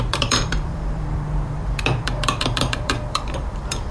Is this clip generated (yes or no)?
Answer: yes